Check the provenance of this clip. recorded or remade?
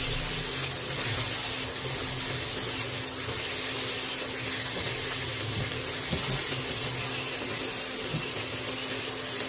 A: recorded